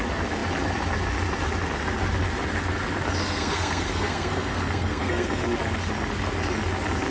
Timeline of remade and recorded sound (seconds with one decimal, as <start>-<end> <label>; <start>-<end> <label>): 0.0-3.2 recorded; 3.2-5.4 remade; 5.4-7.1 recorded